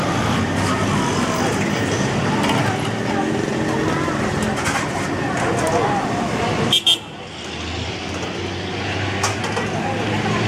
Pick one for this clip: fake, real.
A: real